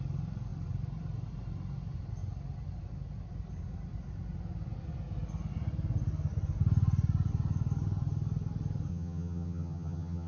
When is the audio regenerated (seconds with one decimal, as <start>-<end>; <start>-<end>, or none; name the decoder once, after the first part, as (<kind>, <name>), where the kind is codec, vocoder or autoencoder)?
8.9-10.3 (vocoder, HiFi-GAN)